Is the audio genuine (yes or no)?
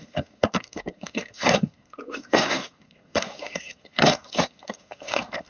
no